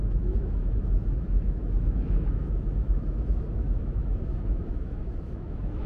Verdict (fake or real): fake